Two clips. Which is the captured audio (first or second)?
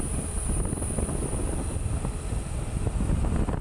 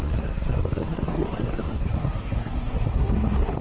first